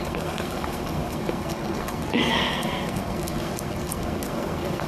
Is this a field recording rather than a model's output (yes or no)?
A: no